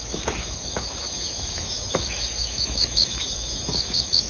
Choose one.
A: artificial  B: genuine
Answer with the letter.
A